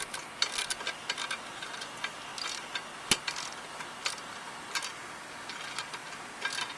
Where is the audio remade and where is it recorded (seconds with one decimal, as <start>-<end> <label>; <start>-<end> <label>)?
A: 0.0-6.8 recorded